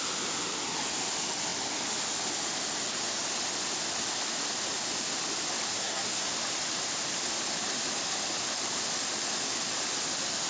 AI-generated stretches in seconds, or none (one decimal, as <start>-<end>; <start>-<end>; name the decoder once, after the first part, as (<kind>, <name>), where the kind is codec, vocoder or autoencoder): 5.7-6.3 (codec, SNAC)